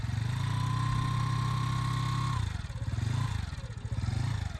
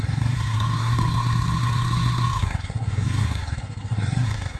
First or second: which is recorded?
first